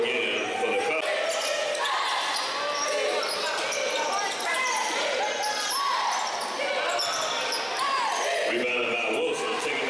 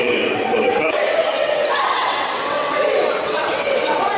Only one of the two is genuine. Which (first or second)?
first